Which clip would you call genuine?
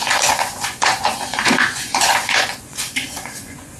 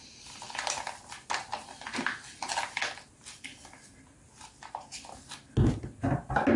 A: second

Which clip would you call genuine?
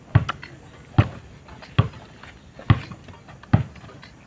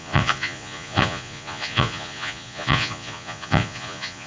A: first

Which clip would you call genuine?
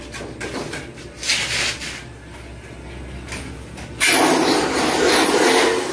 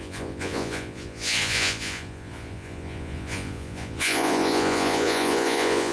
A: first